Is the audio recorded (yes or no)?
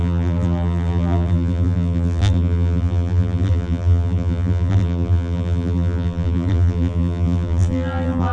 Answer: no